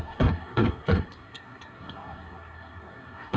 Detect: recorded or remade remade